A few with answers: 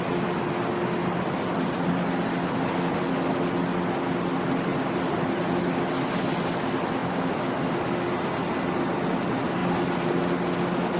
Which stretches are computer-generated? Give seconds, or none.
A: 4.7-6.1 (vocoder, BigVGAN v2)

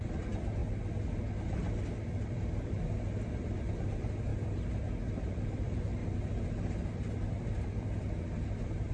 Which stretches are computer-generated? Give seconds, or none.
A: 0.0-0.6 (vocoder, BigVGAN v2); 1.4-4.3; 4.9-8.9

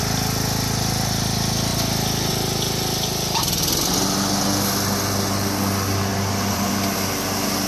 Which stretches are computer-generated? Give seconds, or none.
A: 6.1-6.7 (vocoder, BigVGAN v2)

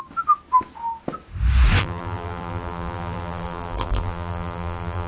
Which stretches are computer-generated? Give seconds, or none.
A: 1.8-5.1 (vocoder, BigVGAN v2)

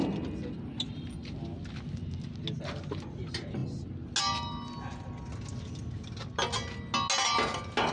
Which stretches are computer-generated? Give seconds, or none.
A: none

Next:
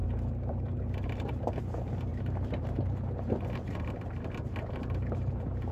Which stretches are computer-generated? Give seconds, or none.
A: 0.0-1.6 (vocoder, BigVGAN v2); 2.1-5.7

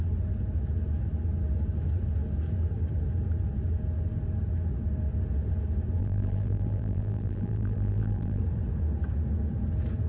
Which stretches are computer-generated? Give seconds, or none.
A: 6.0-8.4 (vocoder, BigVGAN v2)

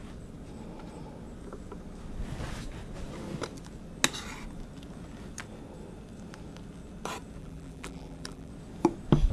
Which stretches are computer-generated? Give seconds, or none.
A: 7.4-8.5 (vocoder, BigVGAN v2)